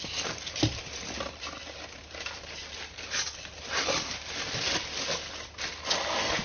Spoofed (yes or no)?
no